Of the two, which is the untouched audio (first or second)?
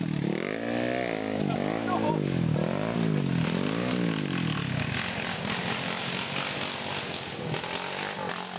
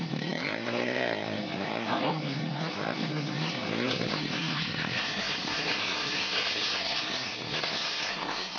first